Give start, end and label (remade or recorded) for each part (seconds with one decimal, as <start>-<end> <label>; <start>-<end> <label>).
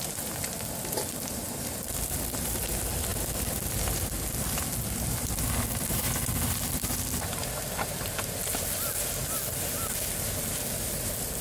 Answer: 0.0-11.4 recorded